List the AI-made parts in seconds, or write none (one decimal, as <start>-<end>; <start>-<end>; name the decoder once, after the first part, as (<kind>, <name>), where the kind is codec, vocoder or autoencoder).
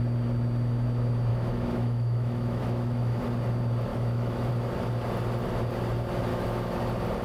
1.3-3.2 (autoencoder, DAC-VAE); 3.9-4.5; 6.3-6.8